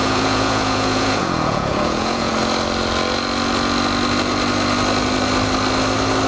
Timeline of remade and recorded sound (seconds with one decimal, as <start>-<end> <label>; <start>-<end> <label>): 0.0-2.3 remade; 2.3-6.3 recorded